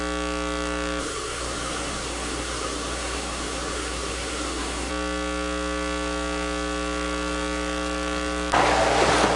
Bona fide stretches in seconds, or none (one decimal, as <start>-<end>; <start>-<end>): 0.0-1.0; 4.9-9.4